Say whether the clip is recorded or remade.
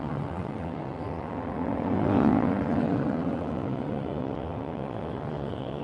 remade